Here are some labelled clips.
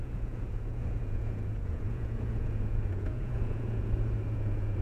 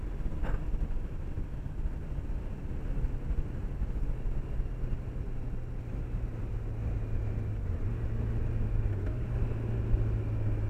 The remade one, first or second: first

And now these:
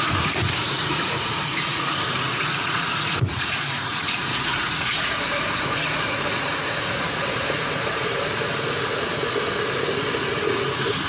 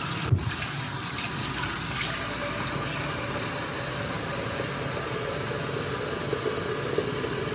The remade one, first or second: first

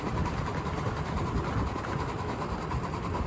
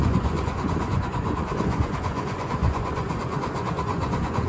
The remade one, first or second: second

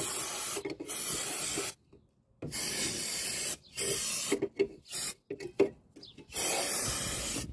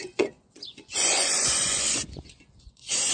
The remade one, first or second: second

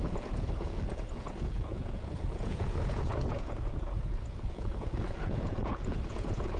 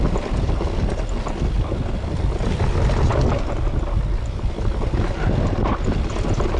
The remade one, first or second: first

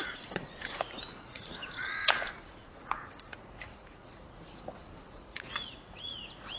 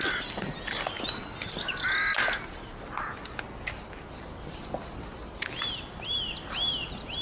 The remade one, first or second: first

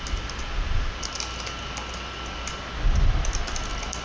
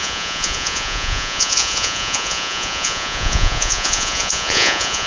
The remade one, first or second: second